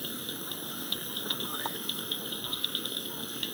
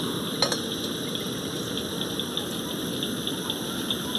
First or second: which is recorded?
second